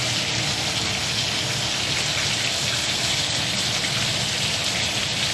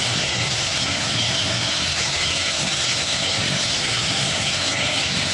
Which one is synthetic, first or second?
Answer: second